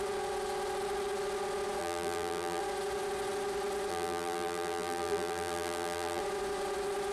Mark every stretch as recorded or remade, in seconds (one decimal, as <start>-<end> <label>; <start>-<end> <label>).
0.0-1.8 recorded; 1.8-2.6 remade; 2.6-3.9 recorded; 3.9-6.2 remade; 6.2-7.1 recorded